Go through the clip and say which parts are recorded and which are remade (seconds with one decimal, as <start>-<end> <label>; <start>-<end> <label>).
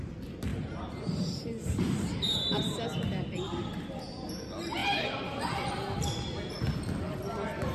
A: 0.0-0.5 recorded; 0.5-2.6 remade; 2.6-7.7 recorded